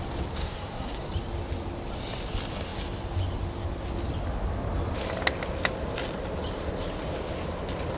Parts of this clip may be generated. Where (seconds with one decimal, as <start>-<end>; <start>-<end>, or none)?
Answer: 0.4-1.1

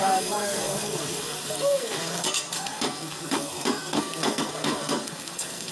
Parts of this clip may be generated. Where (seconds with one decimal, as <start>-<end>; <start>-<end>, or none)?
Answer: 0.0-5.7

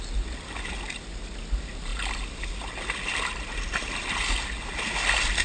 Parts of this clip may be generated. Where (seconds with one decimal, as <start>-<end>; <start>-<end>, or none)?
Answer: none

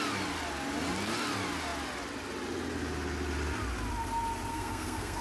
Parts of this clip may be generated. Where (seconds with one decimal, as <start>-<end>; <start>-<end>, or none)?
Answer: 4.5-5.2